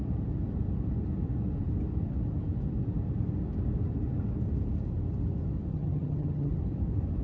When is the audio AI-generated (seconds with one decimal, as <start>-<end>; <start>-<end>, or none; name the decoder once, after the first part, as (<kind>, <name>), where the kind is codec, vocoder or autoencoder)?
5.7-6.5 (vocoder, HiFi-GAN)

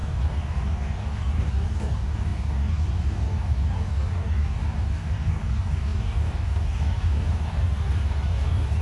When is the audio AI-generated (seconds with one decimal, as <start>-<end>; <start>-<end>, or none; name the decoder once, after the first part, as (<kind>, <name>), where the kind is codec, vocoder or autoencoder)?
0.0-8.8 (codec, DAC)

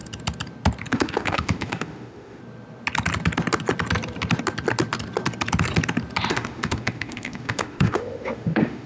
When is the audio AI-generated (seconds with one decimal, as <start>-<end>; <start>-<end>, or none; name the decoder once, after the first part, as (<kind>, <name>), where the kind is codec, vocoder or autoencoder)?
0.9-2.4 (autoencoder, DAC-VAE); 6.3-8.9

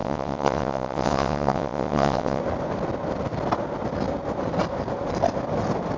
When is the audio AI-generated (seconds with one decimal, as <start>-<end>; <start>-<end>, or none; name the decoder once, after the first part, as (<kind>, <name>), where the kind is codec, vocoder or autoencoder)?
0.0-2.4 (vocoder, WaveNeXt)

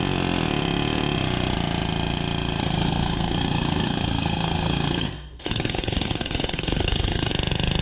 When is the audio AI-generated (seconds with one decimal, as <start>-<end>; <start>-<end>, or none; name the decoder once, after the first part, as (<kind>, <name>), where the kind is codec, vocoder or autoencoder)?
2.6-7.3 (codec, SNAC)

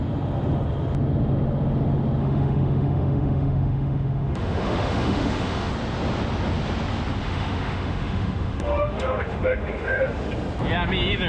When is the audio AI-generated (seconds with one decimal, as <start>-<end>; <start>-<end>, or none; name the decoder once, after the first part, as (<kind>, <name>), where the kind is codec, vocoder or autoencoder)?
2.2-5.7 (autoencoder, DAC-VAE); 7.2-10.3